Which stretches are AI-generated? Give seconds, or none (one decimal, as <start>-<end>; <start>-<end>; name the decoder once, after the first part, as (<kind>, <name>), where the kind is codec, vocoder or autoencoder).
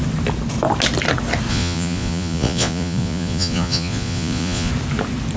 1.5-4.7 (vocoder, Vocos)